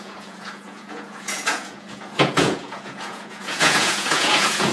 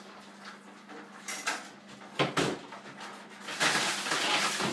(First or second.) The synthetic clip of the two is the first